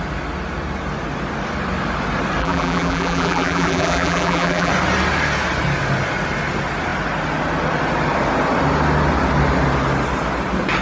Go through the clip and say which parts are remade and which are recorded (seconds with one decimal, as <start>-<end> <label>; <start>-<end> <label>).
0.0-2.4 recorded; 2.4-4.7 remade; 4.7-10.8 recorded